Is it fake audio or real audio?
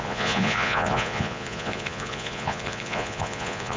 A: fake